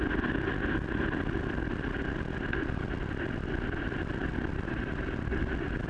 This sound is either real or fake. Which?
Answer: real